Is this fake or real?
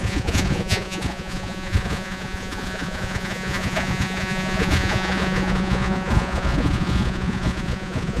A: fake